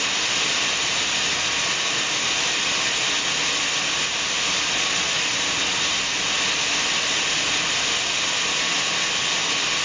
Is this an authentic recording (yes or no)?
yes